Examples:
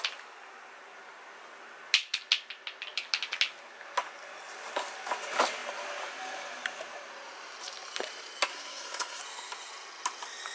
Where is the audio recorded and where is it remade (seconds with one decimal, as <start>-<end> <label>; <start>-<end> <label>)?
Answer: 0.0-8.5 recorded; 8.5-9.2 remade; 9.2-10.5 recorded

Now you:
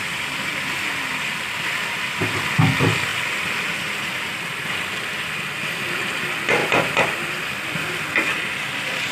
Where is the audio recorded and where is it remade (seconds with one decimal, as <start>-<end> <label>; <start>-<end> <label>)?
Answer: 0.0-9.1 recorded

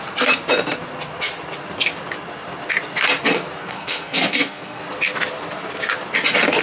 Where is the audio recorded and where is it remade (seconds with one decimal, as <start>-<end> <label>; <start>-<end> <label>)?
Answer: 0.0-3.6 recorded; 3.6-4.8 remade; 4.8-6.6 recorded

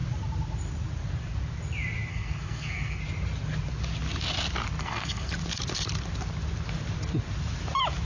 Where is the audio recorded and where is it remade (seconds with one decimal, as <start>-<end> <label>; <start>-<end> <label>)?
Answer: 0.0-2.1 recorded; 2.1-3.0 remade; 3.0-4.8 recorded; 4.8-5.3 remade; 5.3-8.1 recorded

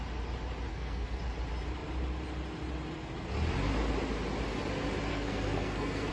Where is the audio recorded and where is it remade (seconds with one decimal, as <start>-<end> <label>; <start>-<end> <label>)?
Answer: 0.0-0.7 recorded; 0.7-1.2 remade; 1.2-5.1 recorded; 5.1-6.1 remade

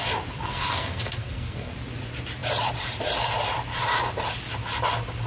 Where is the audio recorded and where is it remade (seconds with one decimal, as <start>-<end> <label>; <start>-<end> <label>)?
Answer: 0.0-0.4 recorded; 0.4-1.7 remade; 1.7-5.3 recorded

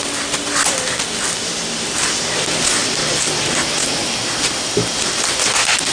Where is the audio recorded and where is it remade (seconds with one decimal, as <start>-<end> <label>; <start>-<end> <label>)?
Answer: 0.0-5.9 recorded

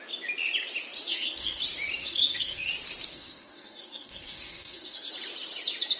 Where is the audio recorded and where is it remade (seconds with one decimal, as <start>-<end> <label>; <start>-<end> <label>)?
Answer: 0.0-1.1 recorded; 1.1-1.6 remade; 1.6-2.0 recorded; 2.0-2.7 remade; 2.7-3.1 recorded; 3.1-5.1 remade; 5.1-6.0 recorded